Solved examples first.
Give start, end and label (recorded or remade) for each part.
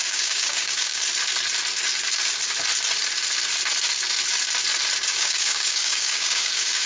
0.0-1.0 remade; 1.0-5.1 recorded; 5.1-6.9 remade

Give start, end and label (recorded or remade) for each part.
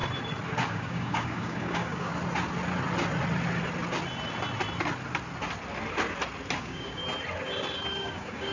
0.0-0.7 recorded; 0.7-2.1 remade; 2.1-6.6 recorded; 6.6-7.0 remade; 7.0-8.0 recorded; 8.0-8.5 remade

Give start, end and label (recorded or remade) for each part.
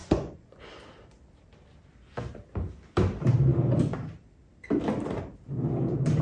0.0-0.6 remade; 0.6-6.2 recorded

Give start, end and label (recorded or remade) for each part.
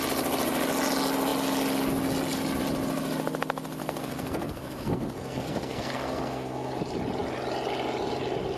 0.0-3.8 recorded; 3.8-6.7 remade; 6.7-8.6 recorded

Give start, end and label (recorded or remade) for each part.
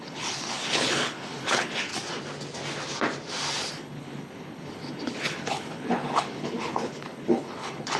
0.0-1.9 remade; 1.9-3.7 recorded; 3.7-8.0 remade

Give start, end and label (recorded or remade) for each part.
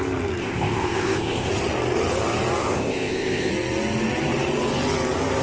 0.0-0.4 recorded; 0.4-1.5 remade; 1.5-2.6 recorded; 2.6-3.5 remade; 3.5-5.4 recorded